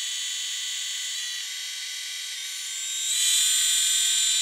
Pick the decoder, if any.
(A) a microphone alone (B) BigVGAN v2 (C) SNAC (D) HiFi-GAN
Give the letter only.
A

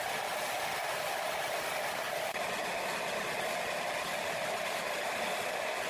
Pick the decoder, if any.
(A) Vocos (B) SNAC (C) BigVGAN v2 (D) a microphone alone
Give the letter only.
D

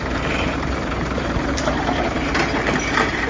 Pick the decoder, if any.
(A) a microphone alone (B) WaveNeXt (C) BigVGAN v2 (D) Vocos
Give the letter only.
C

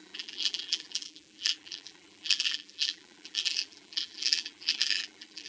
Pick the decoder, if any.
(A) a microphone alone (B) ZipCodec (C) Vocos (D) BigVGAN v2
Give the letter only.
D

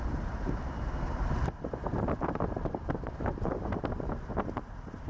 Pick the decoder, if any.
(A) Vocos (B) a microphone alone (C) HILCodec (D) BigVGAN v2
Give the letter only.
D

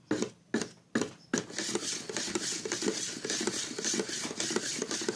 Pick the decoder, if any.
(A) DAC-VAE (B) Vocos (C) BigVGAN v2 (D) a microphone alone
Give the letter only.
D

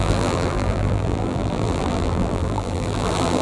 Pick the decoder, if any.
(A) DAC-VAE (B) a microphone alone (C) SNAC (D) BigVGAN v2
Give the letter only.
D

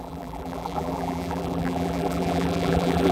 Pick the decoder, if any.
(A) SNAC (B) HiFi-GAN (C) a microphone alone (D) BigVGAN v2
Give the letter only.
D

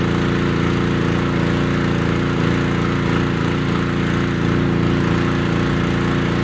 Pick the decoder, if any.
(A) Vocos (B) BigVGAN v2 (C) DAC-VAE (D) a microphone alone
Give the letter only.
D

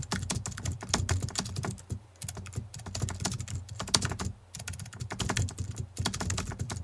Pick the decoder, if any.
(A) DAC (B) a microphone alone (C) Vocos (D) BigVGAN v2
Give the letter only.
B